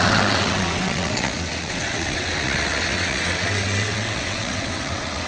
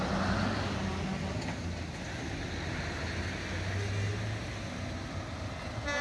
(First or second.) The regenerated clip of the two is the first